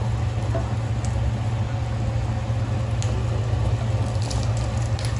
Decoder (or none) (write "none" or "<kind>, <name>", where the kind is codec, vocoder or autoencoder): none